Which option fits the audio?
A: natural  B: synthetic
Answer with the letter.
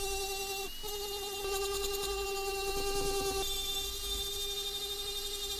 A